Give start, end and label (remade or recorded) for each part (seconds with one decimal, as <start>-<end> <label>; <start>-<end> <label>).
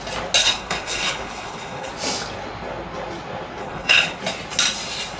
0.0-0.4 recorded; 0.4-1.9 remade; 1.9-3.6 recorded; 3.6-4.2 remade; 4.2-5.2 recorded